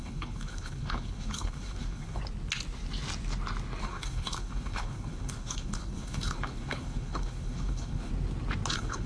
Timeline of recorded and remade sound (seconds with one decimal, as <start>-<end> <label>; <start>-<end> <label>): 0.0-2.2 remade; 2.2-3.8 recorded; 3.8-8.1 remade; 8.1-8.7 recorded; 8.7-9.1 remade